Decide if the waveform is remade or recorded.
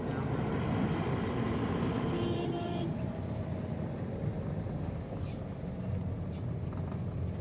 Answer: recorded